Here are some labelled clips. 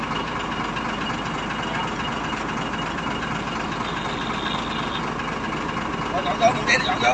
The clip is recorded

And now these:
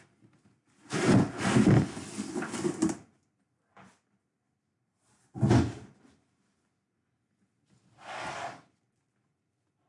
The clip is recorded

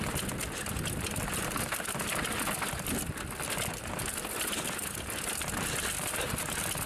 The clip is recorded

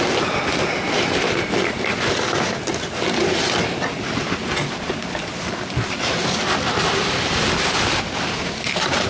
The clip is recorded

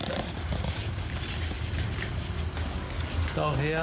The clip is recorded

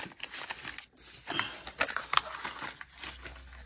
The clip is recorded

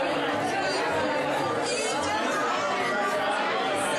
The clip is recorded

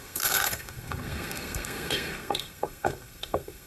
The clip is remade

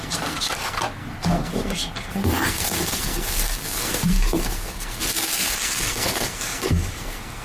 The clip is remade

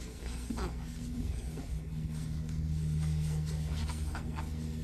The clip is remade